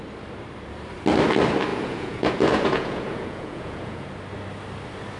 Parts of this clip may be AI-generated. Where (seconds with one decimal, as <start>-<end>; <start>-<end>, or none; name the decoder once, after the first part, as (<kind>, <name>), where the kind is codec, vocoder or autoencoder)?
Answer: 1.7-4.1 (vocoder, Vocos)